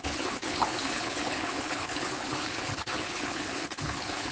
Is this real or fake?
fake